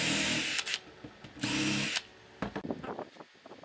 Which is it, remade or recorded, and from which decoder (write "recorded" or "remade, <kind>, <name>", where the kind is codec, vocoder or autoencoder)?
recorded